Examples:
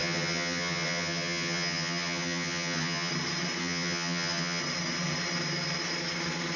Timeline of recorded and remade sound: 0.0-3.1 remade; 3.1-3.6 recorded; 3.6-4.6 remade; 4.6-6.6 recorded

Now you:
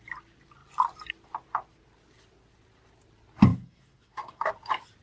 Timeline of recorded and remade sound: 0.0-3.5 recorded; 3.5-4.5 remade; 4.5-5.0 recorded